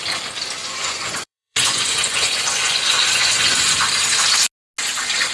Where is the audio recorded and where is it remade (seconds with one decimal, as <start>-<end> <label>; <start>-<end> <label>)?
0.0-0.6 recorded; 0.6-3.8 remade; 3.8-5.3 recorded